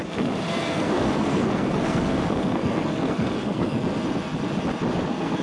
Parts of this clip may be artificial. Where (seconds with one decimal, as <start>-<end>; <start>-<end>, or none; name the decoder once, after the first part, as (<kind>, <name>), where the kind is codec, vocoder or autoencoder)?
0.0-3.8 (codec, SNAC); 4.9-5.4